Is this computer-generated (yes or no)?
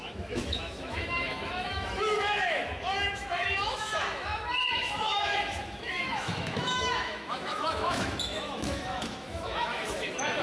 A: yes